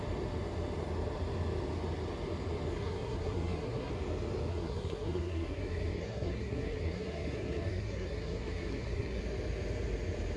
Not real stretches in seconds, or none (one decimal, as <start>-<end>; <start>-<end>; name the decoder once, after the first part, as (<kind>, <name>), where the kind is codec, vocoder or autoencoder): 2.7-3.9 (codec, SNAC); 4.5-9.2